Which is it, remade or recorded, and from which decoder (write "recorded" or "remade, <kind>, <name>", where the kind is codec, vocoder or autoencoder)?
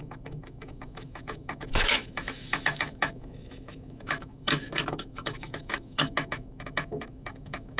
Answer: remade, autoencoder, DAC-VAE